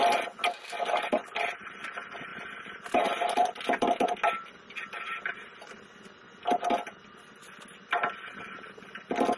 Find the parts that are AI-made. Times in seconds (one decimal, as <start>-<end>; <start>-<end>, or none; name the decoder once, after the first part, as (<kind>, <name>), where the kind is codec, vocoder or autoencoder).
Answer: 2.3-5.7 (vocoder, BigVGAN v2)